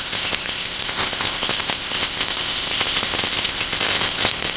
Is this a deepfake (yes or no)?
yes